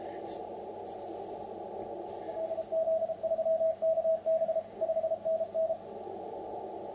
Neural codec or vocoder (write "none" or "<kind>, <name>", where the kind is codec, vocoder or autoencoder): none